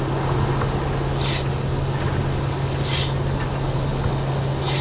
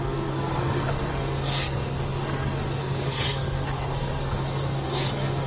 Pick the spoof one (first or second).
second